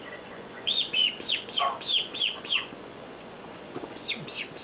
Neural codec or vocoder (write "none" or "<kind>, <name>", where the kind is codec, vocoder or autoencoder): vocoder, Vocos